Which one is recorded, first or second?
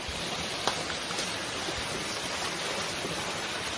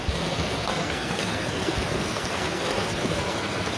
first